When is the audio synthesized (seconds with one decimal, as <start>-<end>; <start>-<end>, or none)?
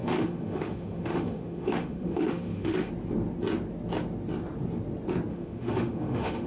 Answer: 0.0-2.9; 5.3-6.5